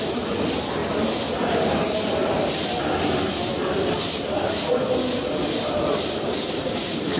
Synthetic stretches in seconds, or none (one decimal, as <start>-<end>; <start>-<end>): 0.0-0.8; 2.5-3.5; 4.0-7.2